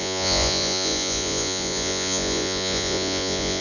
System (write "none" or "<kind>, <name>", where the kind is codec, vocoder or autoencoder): vocoder, Vocos